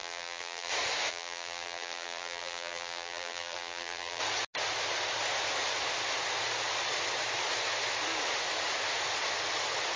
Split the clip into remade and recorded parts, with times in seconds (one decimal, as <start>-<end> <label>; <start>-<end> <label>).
0.0-0.7 remade; 0.7-1.1 recorded; 1.1-4.2 remade; 4.2-10.0 recorded